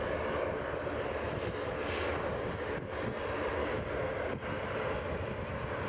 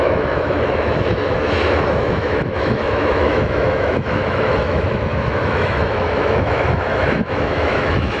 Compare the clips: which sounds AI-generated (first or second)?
second